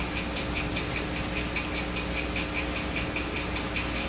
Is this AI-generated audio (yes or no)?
no